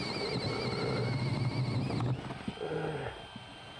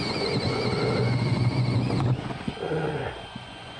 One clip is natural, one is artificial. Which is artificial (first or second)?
second